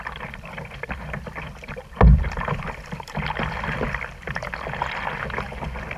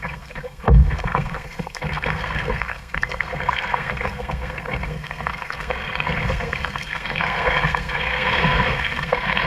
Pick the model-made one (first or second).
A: second